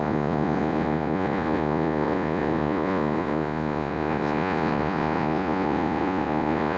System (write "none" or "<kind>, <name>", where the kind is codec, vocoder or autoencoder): vocoder, Vocos